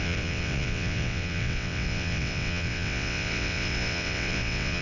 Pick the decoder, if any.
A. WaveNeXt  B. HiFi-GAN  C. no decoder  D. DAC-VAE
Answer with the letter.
A